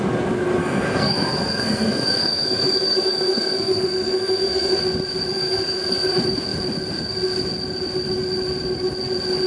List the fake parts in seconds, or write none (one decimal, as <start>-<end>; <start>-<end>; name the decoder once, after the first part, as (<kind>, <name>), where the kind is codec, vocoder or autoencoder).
0.6-4.8 (codec, SNAC); 5.3-6.1